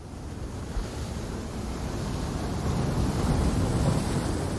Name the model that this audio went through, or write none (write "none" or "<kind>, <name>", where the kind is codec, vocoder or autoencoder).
none